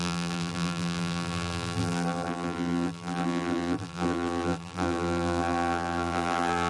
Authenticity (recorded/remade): remade